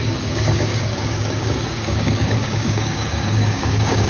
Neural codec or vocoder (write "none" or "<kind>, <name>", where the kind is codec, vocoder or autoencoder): codec, DAC